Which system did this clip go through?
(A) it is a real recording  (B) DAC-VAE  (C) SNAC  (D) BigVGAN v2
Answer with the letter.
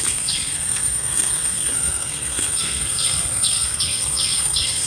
C